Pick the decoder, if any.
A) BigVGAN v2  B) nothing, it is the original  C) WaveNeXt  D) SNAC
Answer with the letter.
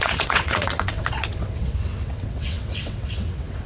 C